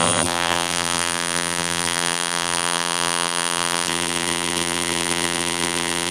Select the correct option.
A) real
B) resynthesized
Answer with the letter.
B